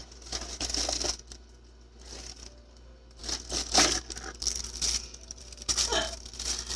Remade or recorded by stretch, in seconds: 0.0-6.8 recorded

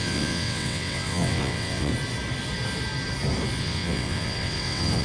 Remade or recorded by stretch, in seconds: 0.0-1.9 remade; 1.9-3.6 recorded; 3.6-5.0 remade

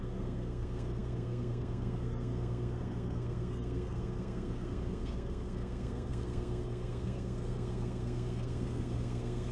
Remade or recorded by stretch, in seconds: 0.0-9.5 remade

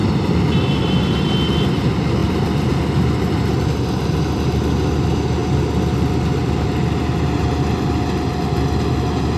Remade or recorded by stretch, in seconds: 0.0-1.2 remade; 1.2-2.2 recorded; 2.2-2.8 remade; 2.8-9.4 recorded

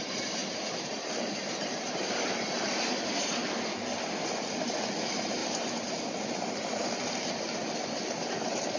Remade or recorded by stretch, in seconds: 0.0-3.4 remade; 3.4-5.0 recorded; 5.0-5.4 remade; 5.4-8.3 recorded; 8.3-8.8 remade

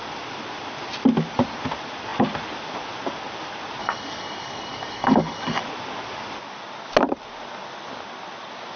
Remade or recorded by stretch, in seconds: 0.0-3.8 recorded; 3.8-5.6 remade; 5.6-8.8 recorded

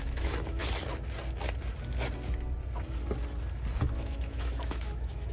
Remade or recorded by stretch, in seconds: 0.0-0.6 remade; 0.6-3.8 recorded; 3.8-5.3 remade